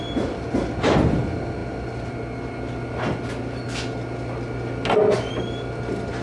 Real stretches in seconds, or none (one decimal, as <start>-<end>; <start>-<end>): 0.0-6.2